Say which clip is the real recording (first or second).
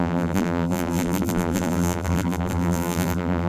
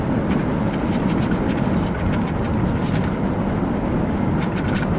second